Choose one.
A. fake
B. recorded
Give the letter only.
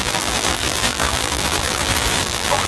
A